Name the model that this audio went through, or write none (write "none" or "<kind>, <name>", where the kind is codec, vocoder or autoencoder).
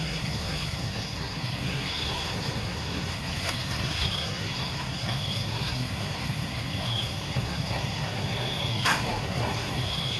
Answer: codec, SNAC